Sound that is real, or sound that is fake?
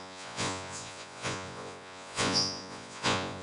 fake